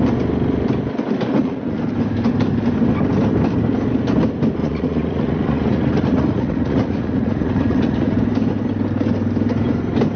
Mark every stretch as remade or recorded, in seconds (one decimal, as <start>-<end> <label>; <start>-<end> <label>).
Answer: 0.0-1.4 recorded; 1.4-1.9 remade; 1.9-4.6 recorded; 4.6-8.2 remade; 8.2-10.2 recorded